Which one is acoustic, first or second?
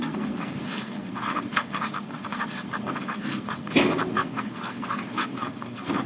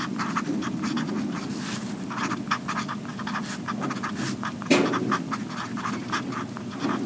second